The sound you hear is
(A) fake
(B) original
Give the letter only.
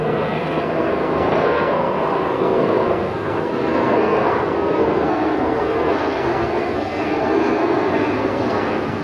A